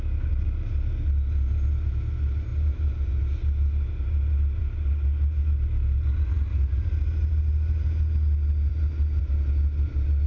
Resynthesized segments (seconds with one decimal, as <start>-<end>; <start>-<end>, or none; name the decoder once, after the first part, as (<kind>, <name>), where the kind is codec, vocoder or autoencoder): 2.5-3.2 (vocoder, BigVGAN v2); 8.7-9.2